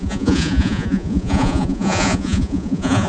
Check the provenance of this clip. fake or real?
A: fake